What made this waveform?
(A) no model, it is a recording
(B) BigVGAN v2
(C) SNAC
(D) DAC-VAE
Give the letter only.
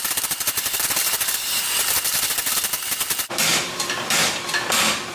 A